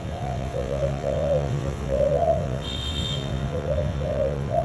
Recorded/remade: remade